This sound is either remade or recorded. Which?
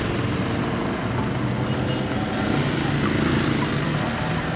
recorded